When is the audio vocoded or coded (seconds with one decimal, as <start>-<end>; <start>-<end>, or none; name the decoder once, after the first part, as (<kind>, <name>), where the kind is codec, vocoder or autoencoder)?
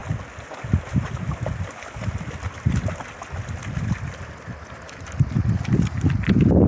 none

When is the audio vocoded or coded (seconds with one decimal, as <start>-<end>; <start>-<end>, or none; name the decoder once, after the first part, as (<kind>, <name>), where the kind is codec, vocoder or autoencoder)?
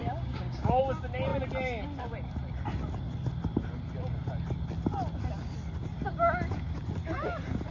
0.0-0.8 (codec, DAC)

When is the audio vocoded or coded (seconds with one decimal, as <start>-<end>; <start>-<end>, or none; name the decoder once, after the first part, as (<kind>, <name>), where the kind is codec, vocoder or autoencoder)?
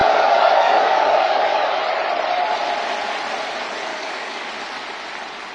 0.0-1.8 (codec, DAC); 3.9-4.5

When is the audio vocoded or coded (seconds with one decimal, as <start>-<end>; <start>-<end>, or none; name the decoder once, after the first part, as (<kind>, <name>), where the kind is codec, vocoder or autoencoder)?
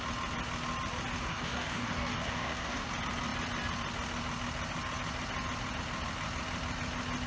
1.2-2.9 (codec, DAC)